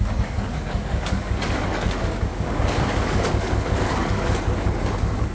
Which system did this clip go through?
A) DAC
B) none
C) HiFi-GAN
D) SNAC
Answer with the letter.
A